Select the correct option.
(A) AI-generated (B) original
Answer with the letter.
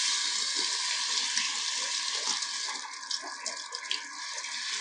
B